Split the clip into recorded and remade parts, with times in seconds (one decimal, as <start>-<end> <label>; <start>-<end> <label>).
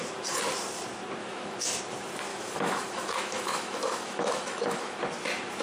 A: 0.0-1.2 recorded; 1.2-1.8 remade; 1.8-2.3 recorded; 2.3-5.0 remade; 5.0-5.6 recorded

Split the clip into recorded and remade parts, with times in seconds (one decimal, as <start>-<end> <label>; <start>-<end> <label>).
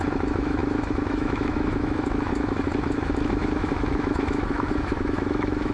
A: 0.0-5.7 remade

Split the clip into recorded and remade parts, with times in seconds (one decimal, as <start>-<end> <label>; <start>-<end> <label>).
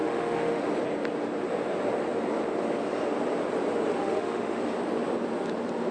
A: 0.0-0.7 remade; 0.7-4.0 recorded; 4.0-4.6 remade; 4.6-5.9 recorded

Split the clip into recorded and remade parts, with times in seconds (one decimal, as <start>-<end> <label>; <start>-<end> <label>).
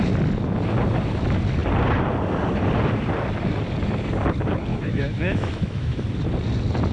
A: 0.0-4.7 recorded; 4.7-6.0 remade; 6.0-6.9 recorded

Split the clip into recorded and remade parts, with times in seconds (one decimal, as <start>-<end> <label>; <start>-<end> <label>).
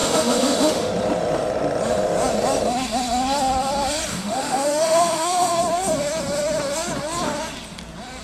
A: 0.0-0.9 remade; 0.9-4.1 recorded; 4.1-5.6 remade; 5.6-8.2 recorded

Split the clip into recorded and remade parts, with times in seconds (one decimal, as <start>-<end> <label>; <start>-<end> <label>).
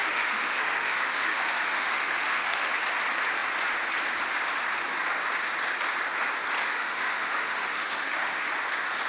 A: 0.0-2.7 remade; 2.7-6.6 recorded; 6.6-8.5 remade; 8.5-9.1 recorded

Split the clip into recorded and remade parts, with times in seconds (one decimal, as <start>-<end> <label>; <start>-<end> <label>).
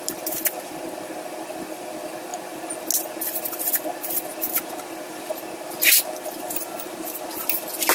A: 0.0-7.9 recorded